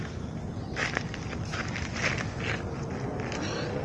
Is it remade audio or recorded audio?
recorded